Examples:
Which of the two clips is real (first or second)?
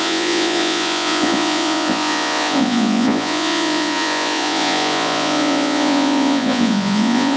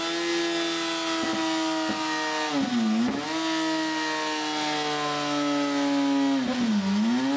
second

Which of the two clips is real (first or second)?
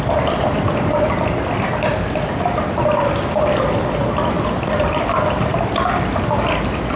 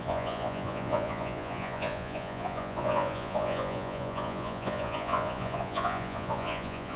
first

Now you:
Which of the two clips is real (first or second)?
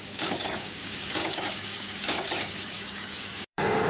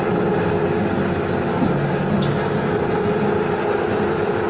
second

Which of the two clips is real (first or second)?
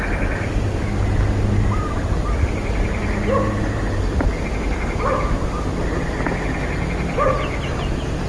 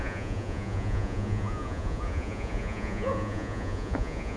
first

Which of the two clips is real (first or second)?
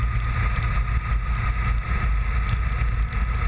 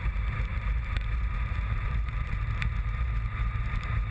first